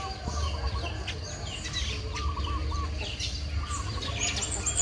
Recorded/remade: recorded